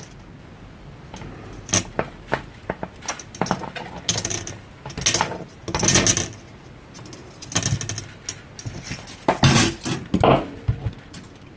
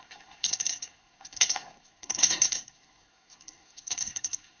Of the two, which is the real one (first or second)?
first